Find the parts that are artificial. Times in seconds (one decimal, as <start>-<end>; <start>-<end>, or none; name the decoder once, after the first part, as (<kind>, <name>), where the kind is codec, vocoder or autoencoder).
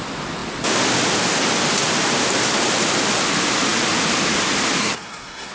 4.8-5.5 (codec, SNAC)